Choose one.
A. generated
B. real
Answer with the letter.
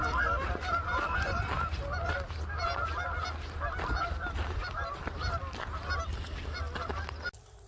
B